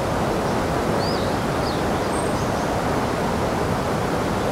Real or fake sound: real